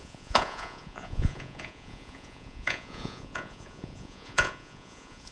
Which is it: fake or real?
fake